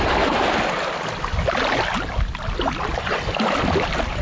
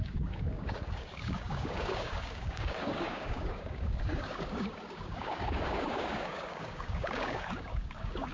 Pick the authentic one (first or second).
first